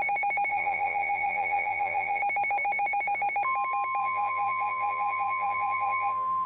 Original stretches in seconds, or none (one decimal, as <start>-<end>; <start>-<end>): 0.0-0.5; 2.2-4.0